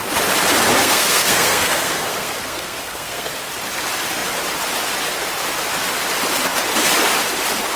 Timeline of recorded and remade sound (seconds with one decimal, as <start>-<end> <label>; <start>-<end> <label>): 0.0-0.8 recorded; 0.8-3.5 remade; 3.5-7.8 recorded